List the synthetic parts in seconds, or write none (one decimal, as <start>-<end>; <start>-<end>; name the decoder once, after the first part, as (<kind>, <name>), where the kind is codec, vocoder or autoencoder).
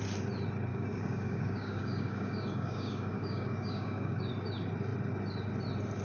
0.7-4.3 (codec, DAC)